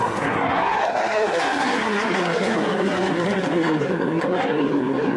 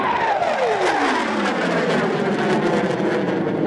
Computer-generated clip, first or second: first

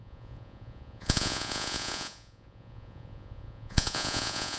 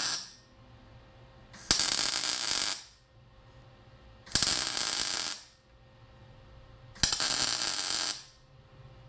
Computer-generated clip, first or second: first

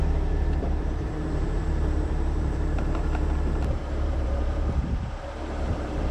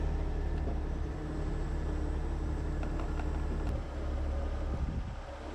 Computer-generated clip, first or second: first